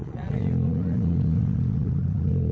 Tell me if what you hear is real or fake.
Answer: fake